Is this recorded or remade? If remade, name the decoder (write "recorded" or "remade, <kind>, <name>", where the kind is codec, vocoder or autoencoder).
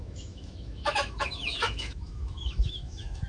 remade, autoencoder, DAC-VAE